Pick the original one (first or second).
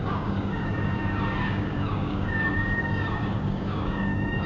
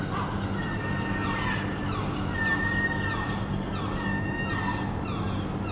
second